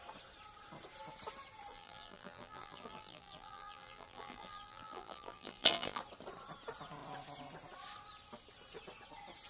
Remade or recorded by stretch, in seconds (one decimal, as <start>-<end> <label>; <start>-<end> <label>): 0.0-1.7 recorded; 1.7-6.0 remade; 6.0-9.5 recorded